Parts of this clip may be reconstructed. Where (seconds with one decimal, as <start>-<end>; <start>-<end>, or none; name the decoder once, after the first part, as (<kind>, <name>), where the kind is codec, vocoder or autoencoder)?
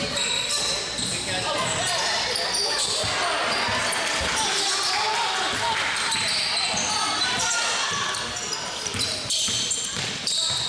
none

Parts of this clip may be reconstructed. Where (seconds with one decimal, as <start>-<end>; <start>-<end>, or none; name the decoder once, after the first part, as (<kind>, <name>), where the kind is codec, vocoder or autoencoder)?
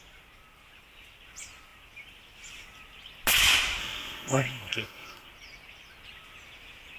3.8-5.3 (codec, SNAC)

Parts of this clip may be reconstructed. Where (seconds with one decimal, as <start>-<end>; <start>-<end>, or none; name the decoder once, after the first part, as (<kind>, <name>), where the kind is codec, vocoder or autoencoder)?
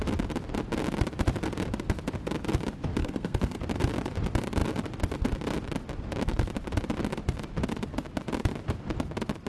3.0-3.6 (codec, SNAC)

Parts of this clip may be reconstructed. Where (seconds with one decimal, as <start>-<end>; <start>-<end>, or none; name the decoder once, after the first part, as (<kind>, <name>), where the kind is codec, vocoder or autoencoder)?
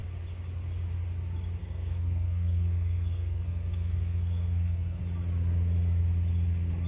1.6-5.0 (codec, SNAC)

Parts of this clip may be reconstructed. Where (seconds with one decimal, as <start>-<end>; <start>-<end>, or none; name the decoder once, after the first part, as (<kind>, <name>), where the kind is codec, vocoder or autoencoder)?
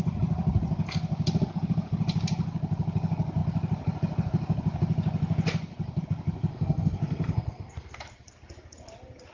6.5-8.0 (codec, SNAC)